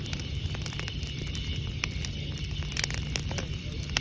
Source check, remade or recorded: remade